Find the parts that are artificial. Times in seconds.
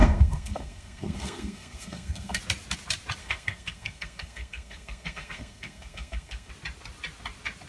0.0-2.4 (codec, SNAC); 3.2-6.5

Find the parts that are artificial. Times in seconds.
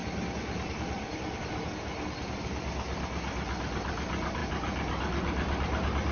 none